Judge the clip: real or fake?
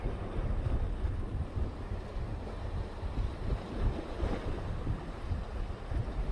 real